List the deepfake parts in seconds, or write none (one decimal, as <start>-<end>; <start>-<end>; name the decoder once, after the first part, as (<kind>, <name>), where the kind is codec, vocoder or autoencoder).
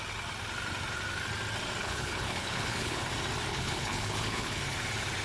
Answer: 1.8-3.0 (codec, HILCodec); 3.5-4.6